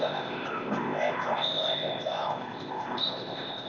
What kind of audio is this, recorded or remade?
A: remade